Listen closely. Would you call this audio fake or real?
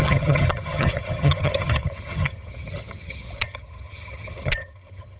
fake